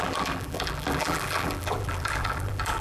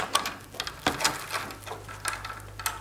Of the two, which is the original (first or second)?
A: second